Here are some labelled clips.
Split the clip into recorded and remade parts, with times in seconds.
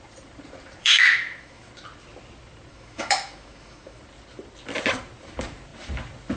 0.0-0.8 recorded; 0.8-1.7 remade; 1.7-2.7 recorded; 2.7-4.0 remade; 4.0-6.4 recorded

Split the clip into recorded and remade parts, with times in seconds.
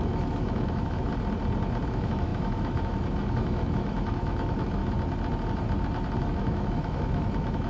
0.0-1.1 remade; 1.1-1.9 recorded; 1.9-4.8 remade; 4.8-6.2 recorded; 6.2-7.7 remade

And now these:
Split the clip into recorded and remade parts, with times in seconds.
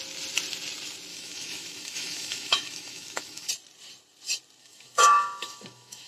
0.0-1.1 recorded; 1.1-3.5 remade; 3.5-4.6 recorded; 4.6-6.1 remade